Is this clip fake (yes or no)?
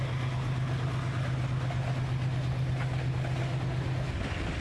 no